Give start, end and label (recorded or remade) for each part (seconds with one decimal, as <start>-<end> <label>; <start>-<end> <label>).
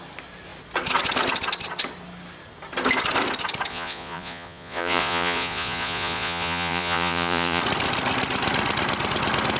0.0-3.7 recorded; 3.7-7.6 remade; 7.6-9.6 recorded